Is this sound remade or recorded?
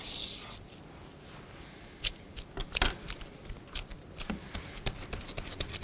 recorded